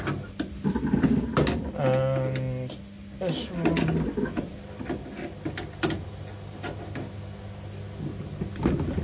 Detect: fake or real real